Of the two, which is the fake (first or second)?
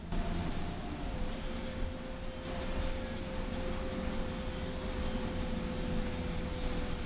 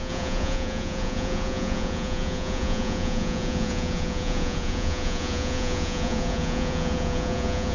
second